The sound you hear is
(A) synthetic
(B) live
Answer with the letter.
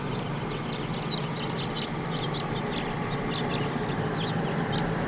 B